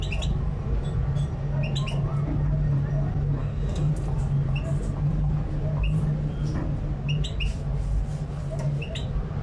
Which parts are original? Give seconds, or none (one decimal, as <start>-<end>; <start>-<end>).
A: 0.0-3.4; 3.9-9.4